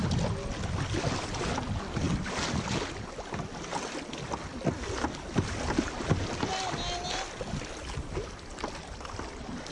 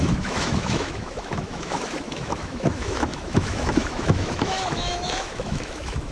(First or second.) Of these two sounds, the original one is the first